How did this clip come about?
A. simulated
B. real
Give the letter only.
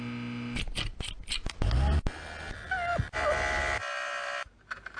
B